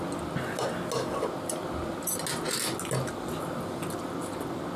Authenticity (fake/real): real